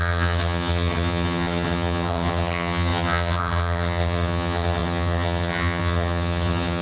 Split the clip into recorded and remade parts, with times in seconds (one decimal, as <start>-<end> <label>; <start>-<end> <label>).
0.0-6.8 remade